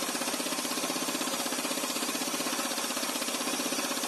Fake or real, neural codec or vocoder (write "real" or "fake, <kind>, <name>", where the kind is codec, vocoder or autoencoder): fake, vocoder, BigVGAN v2